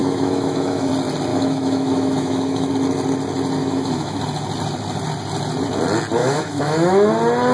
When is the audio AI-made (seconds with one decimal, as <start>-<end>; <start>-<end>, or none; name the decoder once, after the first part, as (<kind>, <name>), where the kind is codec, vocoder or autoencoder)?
0.0-0.9 (autoencoder, DAC-VAE); 1.3-2.7; 3.6-4.2; 6.2-7.1